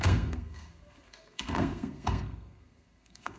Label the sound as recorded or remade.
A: remade